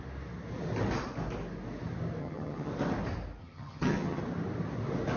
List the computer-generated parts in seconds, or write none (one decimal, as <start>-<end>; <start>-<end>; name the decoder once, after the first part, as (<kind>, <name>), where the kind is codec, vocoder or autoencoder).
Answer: 2.2-2.7 (vocoder, HiFi-GAN); 3.4-4.2